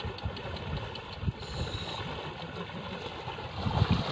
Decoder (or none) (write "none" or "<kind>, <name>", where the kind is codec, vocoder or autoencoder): none